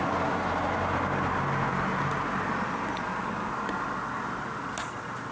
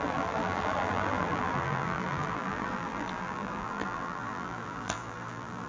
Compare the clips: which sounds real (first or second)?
first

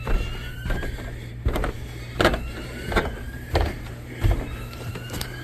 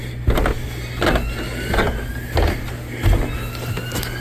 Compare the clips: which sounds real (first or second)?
second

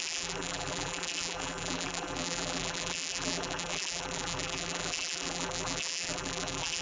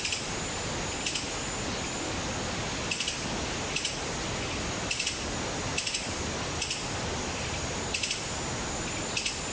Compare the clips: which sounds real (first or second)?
second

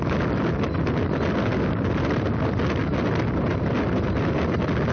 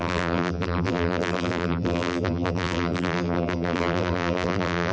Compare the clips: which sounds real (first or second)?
first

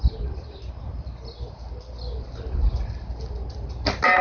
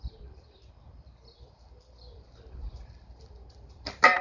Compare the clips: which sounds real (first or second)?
first